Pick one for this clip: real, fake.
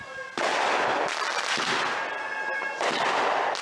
real